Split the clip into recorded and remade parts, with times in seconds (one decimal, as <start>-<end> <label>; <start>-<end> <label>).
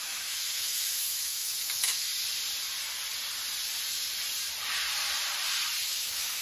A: 0.0-2.1 remade; 2.1-5.9 recorded; 5.9-6.4 remade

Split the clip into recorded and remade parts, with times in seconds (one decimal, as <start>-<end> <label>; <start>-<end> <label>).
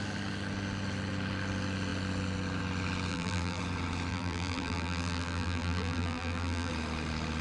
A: 0.0-3.1 recorded; 3.1-3.6 remade; 3.6-4.1 recorded; 4.1-6.7 remade; 6.7-7.4 recorded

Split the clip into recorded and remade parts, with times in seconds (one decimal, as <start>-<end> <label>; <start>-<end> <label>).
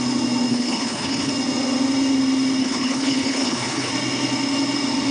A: 0.0-0.5 recorded; 0.5-1.3 remade; 1.3-2.6 recorded; 2.6-3.9 remade; 3.9-5.1 recorded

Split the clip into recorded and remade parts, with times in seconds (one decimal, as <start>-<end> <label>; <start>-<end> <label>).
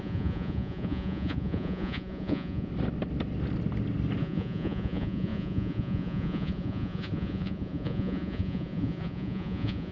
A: 0.0-2.7 remade; 2.7-4.2 recorded; 4.2-9.9 remade